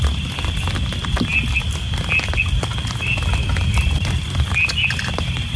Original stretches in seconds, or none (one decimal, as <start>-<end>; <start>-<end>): 0.0-5.6